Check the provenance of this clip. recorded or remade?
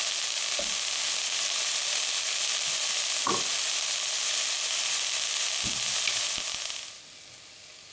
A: recorded